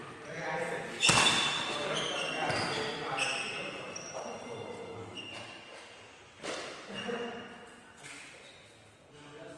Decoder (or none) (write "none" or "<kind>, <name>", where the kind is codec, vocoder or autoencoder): none